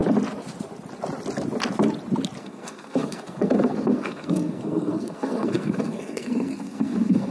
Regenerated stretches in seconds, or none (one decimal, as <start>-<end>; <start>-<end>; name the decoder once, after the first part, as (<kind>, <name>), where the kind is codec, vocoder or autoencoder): 2.4-7.3 (codec, SNAC)